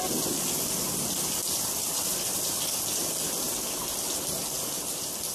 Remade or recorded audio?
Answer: recorded